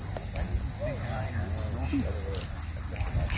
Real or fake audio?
real